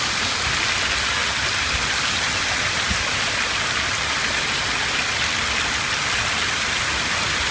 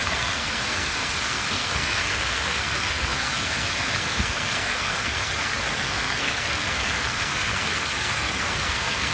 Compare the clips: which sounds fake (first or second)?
second